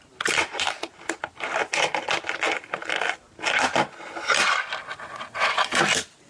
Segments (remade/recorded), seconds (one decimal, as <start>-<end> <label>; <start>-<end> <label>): 0.0-4.8 recorded; 4.8-5.8 remade; 5.8-6.3 recorded